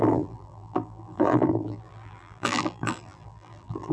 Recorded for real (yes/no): no